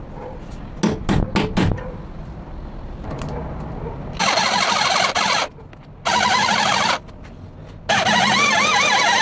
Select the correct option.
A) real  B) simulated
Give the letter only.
A